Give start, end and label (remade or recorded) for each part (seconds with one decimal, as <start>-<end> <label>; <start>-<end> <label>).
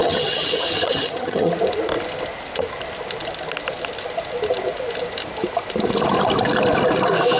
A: 0.0-1.5 remade; 1.5-7.4 recorded